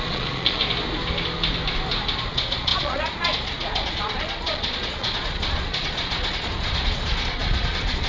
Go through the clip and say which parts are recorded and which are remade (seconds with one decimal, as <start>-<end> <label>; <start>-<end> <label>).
0.0-0.6 remade; 0.6-2.3 recorded; 2.3-8.1 remade